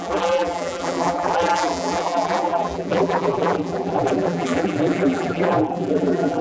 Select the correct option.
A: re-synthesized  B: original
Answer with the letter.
A